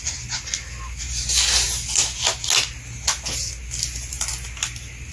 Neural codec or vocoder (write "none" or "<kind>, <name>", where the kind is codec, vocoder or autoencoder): none